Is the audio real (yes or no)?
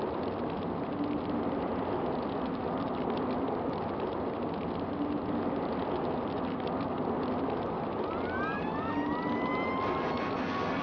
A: yes